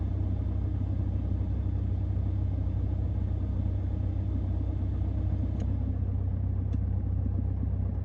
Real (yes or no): yes